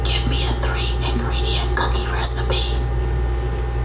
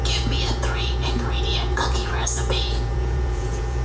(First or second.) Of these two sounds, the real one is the first